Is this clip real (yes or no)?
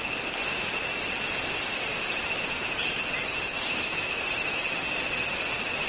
yes